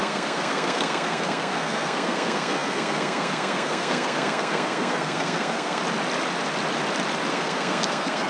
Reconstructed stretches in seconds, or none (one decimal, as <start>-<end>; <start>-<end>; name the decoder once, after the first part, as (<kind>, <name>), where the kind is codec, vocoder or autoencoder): 0.0-5.8 (codec, SNAC); 7.3-8.3